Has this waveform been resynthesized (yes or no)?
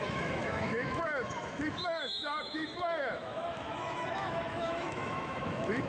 yes